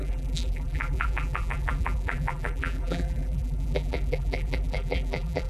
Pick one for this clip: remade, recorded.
remade